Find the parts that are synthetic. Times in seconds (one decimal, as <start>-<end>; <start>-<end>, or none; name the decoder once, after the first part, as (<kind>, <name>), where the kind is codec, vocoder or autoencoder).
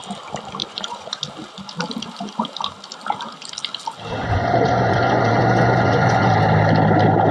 0.6-1.2 (vocoder, Vocos); 4.2-6.3